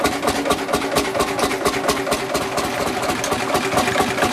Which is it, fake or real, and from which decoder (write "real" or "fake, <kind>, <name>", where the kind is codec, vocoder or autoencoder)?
real